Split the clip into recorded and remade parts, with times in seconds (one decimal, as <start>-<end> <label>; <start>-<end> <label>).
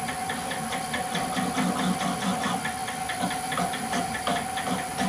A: 0.0-5.1 recorded